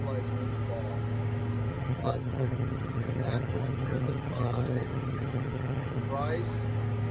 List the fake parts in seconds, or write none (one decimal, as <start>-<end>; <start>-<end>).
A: 1.7-6.0

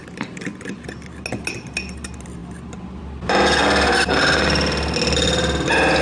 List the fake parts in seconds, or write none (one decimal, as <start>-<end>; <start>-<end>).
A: none

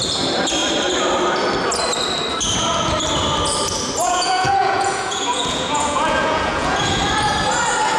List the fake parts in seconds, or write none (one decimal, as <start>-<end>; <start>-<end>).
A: 4.0-7.0

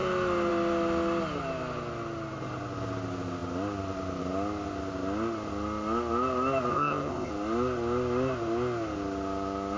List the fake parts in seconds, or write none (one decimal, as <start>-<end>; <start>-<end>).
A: 6.7-7.3

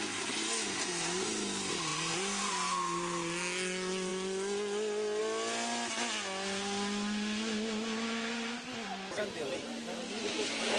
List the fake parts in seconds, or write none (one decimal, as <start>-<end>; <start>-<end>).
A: none

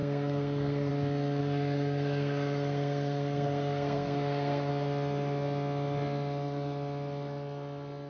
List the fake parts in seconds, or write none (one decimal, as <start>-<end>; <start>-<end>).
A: 0.0-0.9; 1.4-4.7

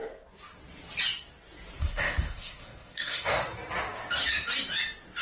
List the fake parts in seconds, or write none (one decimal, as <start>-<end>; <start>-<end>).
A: 1.8-3.4

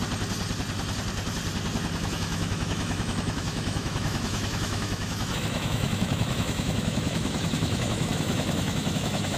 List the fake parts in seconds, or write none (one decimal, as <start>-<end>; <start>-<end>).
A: 2.0-9.4